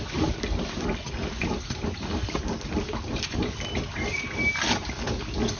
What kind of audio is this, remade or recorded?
recorded